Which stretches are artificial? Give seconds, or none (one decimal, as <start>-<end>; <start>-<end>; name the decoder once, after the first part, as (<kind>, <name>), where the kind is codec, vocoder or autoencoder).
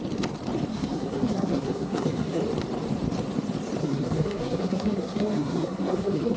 0.7-2.4 (codec, SNAC); 3.8-6.4